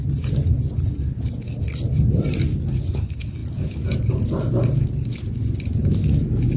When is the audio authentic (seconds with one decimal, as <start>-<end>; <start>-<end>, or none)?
0.6-6.6